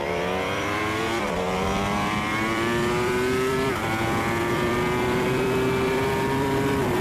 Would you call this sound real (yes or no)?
no